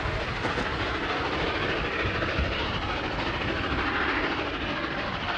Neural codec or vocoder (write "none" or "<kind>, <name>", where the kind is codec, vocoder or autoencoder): none